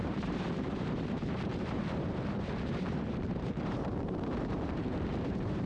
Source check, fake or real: fake